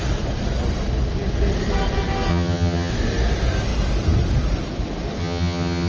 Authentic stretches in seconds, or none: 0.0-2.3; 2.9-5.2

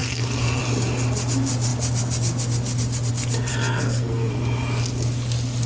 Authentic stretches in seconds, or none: 0.6-3.5; 4.3-5.7

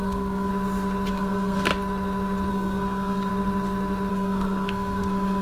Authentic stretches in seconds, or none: 0.5-1.1; 1.7-2.5; 3.3-4.1

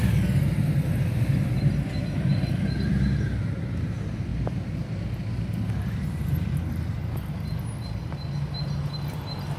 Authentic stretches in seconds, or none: 0.0-9.6

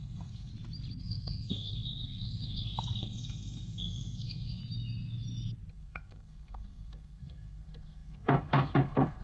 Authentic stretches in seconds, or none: 0.5-1.0; 4.6-5.7

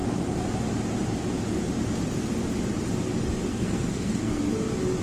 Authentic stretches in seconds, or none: 0.0-3.5; 4.4-5.0

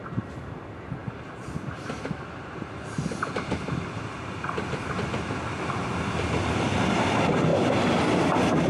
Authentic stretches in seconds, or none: 0.0-8.7

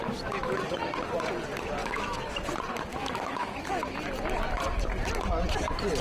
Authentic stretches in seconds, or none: 0.0-1.8; 2.3-2.9; 4.0-6.0